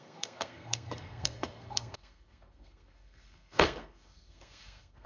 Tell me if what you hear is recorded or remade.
remade